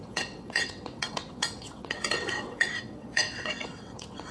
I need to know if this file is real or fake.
fake